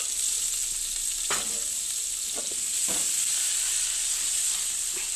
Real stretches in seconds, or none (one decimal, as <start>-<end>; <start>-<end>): 0.0-5.2